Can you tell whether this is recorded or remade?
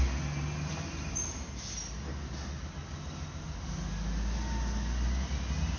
recorded